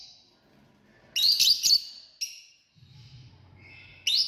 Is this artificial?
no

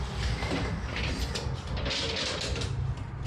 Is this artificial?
no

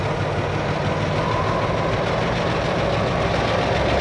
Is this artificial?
no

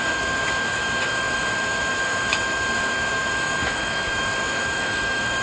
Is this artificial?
yes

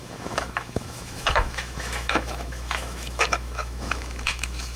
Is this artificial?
yes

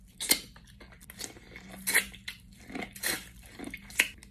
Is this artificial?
no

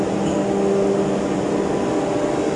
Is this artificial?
no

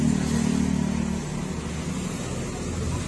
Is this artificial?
no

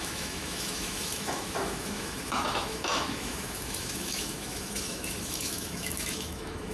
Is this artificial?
yes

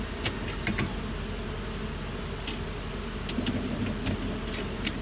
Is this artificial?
no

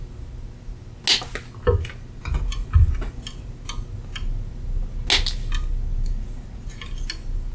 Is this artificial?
no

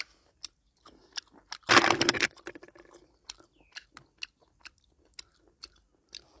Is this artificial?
no